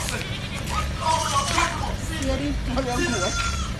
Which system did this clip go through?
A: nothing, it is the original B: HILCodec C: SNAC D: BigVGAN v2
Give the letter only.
A